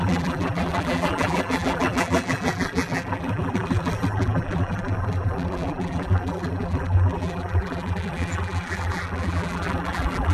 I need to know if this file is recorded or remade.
remade